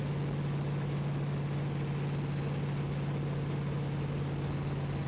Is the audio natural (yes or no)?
yes